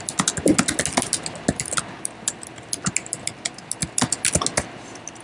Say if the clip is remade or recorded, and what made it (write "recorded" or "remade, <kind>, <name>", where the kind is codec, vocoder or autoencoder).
recorded